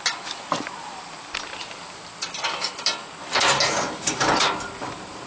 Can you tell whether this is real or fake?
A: real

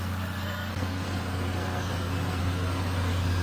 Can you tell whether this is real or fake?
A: fake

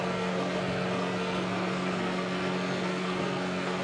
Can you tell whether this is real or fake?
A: fake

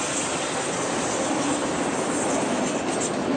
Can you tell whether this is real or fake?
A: real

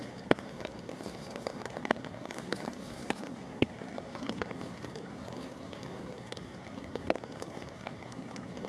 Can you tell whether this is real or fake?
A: fake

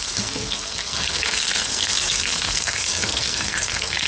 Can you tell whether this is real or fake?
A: fake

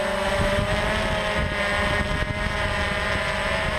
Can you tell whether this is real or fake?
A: real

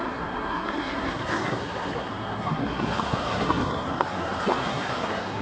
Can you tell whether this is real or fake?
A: fake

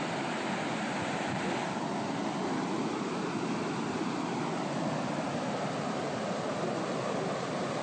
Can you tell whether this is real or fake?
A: real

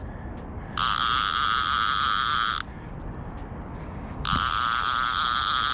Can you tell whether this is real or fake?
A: real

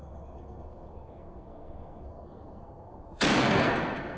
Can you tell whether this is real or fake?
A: fake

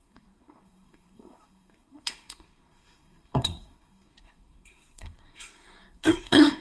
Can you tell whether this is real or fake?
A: fake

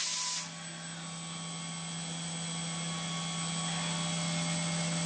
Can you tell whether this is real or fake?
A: real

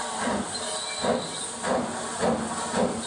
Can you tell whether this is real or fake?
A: real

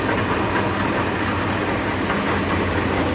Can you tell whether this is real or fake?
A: real